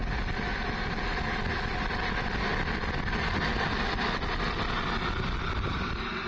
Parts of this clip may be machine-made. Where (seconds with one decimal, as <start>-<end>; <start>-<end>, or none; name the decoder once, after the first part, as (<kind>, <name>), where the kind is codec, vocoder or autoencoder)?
none

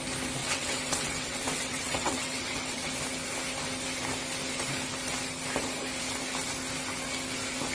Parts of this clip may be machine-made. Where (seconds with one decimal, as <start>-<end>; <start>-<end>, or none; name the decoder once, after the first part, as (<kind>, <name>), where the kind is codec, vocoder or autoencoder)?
0.4-2.9 (vocoder, WaveNeXt)

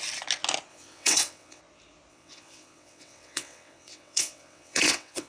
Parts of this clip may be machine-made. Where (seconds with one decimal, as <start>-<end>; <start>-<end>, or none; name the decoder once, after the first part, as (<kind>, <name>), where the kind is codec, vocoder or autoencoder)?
0.7-1.6 (vocoder, WaveNeXt); 2.1-5.3

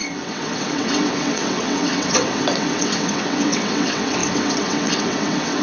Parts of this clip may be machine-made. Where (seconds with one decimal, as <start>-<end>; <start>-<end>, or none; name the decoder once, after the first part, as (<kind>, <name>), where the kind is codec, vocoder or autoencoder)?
0.0-5.6 (vocoder, WaveNeXt)

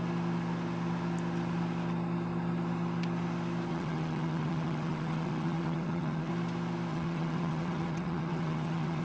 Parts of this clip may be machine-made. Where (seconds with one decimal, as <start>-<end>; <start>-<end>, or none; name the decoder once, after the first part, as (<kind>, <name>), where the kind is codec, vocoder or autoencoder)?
3.7-6.3 (vocoder, WaveNeXt); 6.9-9.0

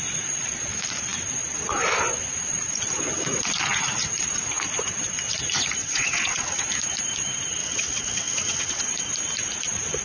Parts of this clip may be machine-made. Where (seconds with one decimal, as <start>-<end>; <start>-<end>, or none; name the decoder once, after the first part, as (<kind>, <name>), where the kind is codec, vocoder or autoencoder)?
5.8-6.6 (vocoder, WaveNeXt); 7.6-8.8